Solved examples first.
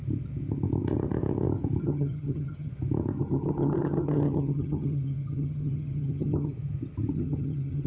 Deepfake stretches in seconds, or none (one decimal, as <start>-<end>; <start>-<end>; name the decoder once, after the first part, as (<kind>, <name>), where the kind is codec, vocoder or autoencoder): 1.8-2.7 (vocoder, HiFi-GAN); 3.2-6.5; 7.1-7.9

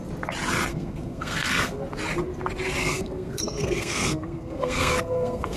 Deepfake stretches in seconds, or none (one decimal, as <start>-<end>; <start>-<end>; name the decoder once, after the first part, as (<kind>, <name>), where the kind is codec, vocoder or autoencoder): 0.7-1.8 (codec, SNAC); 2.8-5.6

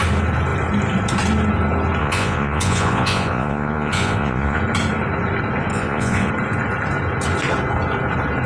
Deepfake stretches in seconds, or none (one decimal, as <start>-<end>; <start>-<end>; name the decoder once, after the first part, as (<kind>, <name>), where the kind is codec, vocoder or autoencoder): 2.0-4.6 (vocoder, Vocos); 5.7-6.3

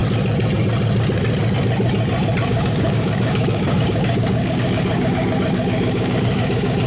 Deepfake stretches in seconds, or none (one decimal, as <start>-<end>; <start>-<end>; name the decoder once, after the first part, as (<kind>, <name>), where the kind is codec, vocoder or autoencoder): 2.5-6.9 (codec, DAC)

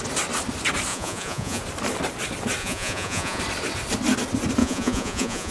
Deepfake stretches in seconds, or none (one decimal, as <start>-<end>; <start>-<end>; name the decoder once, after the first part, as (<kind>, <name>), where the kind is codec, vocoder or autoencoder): 0.9-1.6 (vocoder, Vocos); 2.6-3.4; 4.6-5.5

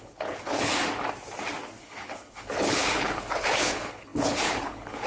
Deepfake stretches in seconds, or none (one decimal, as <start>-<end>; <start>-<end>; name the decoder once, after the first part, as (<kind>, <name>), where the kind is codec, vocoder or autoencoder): 0.0-0.8 (codec, HILCodec); 1.8-5.1